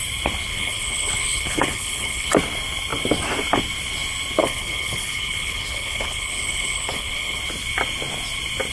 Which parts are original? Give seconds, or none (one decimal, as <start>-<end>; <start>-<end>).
0.0-0.5; 2.3-4.4; 7.4-8.7